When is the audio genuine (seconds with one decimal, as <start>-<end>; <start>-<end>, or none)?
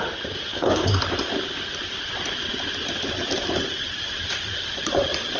0.0-0.5; 1.0-5.4